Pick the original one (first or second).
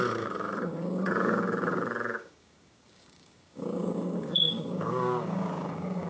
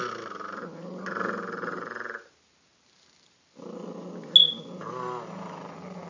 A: second